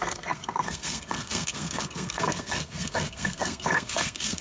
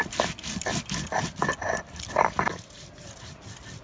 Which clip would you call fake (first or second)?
first